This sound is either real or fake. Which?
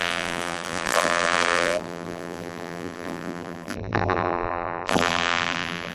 fake